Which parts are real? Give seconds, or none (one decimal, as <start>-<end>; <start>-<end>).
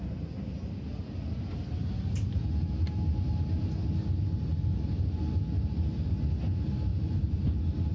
0.0-6.9; 7.5-7.9